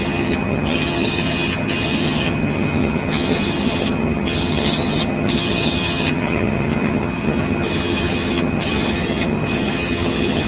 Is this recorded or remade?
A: remade